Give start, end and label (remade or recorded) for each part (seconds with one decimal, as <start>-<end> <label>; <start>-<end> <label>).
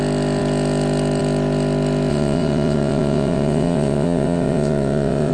0.0-2.1 recorded; 2.1-5.3 remade